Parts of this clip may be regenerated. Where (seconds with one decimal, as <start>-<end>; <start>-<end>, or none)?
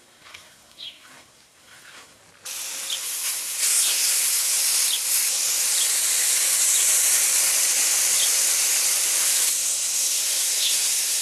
0.0-2.2; 3.0-4.6; 9.2-11.2